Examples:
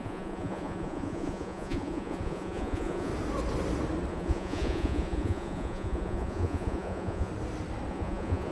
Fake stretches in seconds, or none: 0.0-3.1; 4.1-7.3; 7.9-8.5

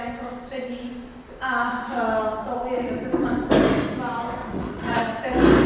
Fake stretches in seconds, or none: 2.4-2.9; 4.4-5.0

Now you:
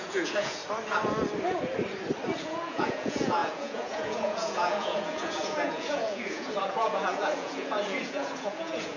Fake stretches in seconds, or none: 0.0-0.6; 2.4-9.0